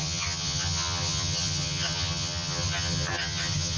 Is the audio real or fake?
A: fake